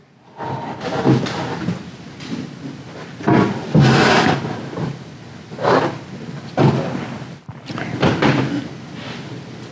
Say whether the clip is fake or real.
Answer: real